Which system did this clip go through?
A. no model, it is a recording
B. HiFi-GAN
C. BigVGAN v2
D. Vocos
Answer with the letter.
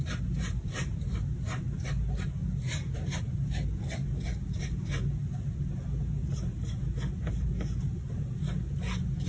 A